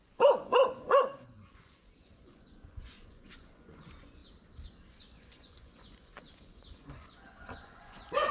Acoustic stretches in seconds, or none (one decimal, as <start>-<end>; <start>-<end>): 4.2-4.9